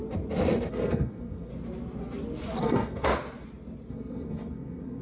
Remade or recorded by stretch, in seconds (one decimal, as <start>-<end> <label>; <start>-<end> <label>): 0.0-0.7 recorded; 0.7-1.5 remade; 1.5-2.6 recorded; 2.6-3.1 remade; 3.1-3.9 recorded; 3.9-5.0 remade